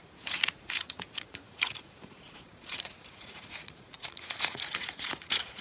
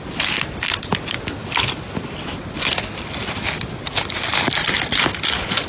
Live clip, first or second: second